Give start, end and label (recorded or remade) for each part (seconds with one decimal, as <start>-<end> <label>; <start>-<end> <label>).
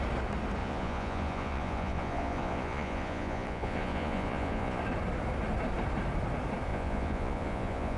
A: 0.0-0.6 recorded; 0.6-4.8 remade; 4.8-6.7 recorded; 6.7-8.0 remade